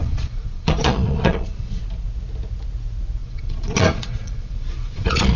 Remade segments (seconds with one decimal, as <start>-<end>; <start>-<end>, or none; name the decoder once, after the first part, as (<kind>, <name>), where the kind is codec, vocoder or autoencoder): 0.0-1.8 (vocoder, Vocos); 3.2-5.4